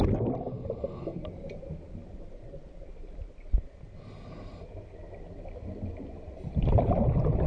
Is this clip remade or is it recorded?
recorded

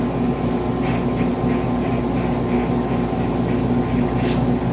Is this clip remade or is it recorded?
recorded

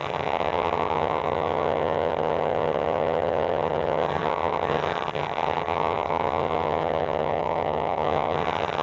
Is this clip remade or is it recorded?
remade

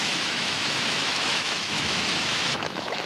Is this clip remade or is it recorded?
remade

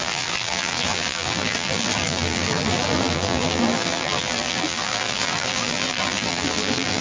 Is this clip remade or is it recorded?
remade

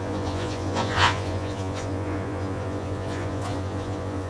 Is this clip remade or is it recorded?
remade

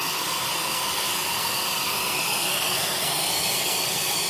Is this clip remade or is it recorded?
remade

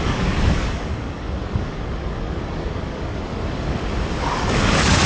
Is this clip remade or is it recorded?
remade